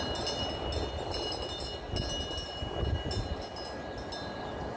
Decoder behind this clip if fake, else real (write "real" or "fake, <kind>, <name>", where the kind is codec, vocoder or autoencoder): real